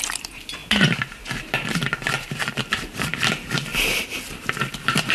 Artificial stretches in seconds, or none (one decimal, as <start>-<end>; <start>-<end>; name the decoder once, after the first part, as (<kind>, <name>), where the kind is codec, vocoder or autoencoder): 3.7-4.6 (vocoder, BigVGAN v2)